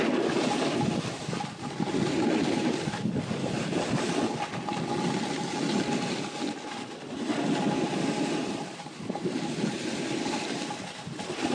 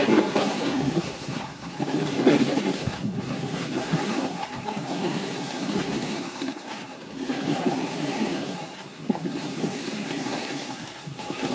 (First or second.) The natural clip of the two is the first